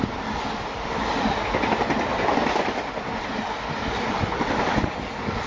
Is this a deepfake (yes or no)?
no